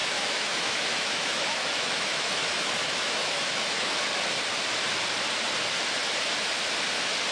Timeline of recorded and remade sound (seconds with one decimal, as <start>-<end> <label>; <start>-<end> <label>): 0.0-4.0 remade; 4.0-7.3 recorded